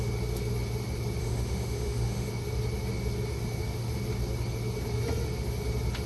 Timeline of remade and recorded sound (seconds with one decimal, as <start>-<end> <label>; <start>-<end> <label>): 0.0-1.2 recorded; 1.2-2.3 remade; 2.3-6.1 recorded

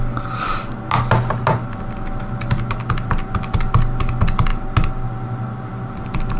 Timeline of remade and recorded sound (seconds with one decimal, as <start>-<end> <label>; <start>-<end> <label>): 0.0-6.4 recorded

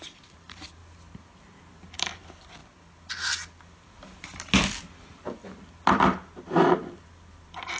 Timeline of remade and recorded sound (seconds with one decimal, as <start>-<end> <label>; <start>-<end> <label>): 0.0-0.8 remade; 0.8-2.2 recorded; 2.2-2.6 remade; 2.6-7.3 recorded; 7.3-7.8 remade